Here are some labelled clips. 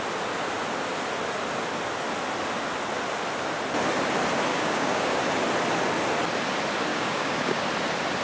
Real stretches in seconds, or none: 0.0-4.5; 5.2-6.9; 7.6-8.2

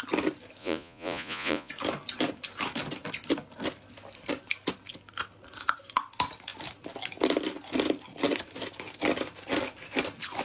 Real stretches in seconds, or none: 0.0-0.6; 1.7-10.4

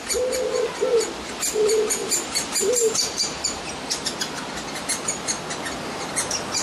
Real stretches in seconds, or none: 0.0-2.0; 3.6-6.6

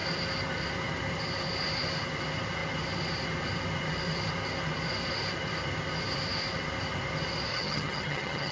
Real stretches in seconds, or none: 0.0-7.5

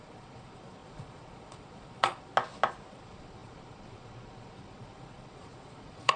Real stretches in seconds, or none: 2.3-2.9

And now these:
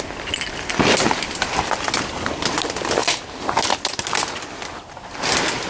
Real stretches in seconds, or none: 0.0-5.7

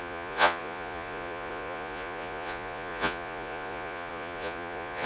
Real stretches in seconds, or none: none

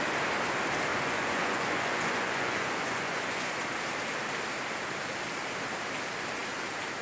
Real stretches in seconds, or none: 0.0-0.9; 3.6-7.0